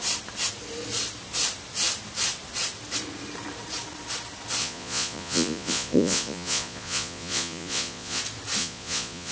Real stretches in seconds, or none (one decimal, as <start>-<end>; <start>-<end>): 0.0-4.6; 8.2-8.6